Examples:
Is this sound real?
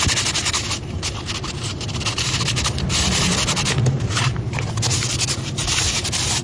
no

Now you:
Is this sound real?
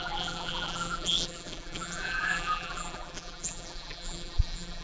no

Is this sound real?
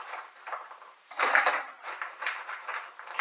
no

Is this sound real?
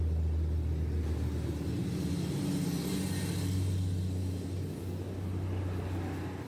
yes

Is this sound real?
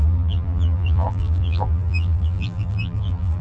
no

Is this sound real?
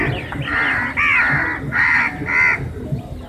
yes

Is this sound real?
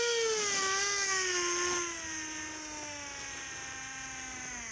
yes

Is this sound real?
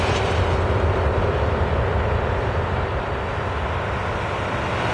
yes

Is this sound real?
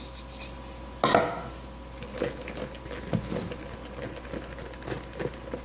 yes